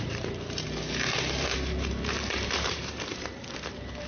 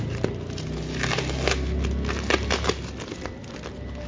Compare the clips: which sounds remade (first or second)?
first